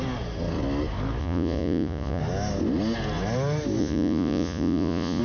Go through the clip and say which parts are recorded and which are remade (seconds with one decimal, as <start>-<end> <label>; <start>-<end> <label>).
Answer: 0.0-1.2 recorded; 1.2-2.2 remade; 2.2-3.8 recorded; 3.8-5.2 remade